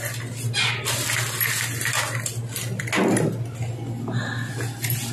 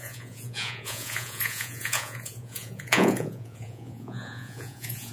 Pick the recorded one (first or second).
first